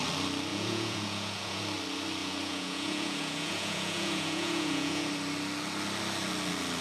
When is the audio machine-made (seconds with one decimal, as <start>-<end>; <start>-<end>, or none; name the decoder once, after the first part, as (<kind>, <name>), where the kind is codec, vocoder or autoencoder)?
0.5-1.6 (vocoder, Vocos); 2.2-5.1